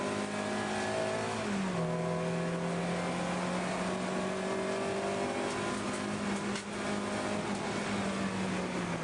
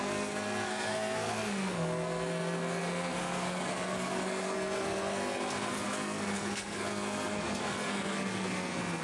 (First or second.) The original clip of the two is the first